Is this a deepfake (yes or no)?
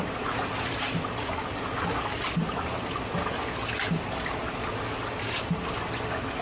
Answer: no